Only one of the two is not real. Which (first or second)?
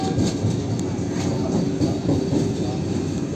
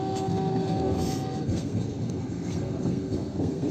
second